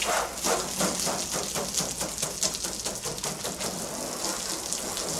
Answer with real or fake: real